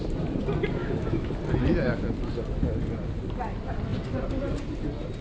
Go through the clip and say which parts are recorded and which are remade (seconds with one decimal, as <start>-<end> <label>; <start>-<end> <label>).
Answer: 0.0-0.8 recorded; 0.8-1.3 remade; 1.3-5.2 recorded